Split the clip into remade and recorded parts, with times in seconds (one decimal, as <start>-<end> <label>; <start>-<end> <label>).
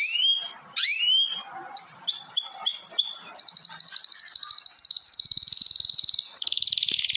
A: 0.0-7.2 recorded